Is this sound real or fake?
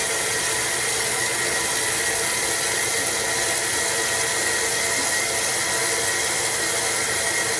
real